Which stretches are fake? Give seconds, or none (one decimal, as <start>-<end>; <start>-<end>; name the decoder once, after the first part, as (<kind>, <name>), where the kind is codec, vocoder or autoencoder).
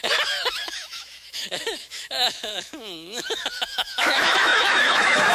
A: 0.0-5.3 (autoencoder, DAC-VAE)